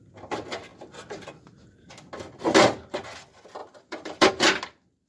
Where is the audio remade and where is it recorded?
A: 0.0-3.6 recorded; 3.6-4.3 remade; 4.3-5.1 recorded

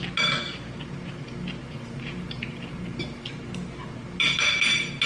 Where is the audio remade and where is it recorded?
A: 0.0-1.6 recorded; 1.6-3.5 remade; 3.5-5.1 recorded

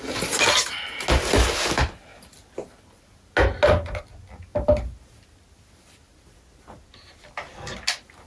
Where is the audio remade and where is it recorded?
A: 0.0-8.3 recorded

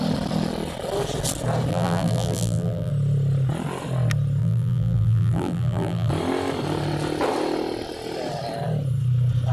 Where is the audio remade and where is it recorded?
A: 0.0-1.7 recorded; 1.7-2.9 remade; 2.9-4.4 recorded; 4.4-6.1 remade; 6.1-9.5 recorded

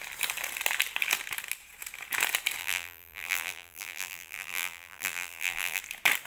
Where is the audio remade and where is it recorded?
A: 0.0-2.6 recorded; 2.6-5.8 remade; 5.8-6.3 recorded

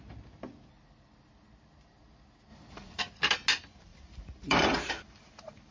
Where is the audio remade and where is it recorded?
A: 0.0-2.5 recorded; 2.5-3.0 remade; 3.0-3.9 recorded; 3.9-5.7 remade

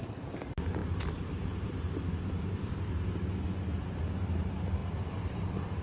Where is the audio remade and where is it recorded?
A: 0.0-0.8 recorded; 0.8-2.9 remade; 2.9-4.8 recorded; 4.8-5.8 remade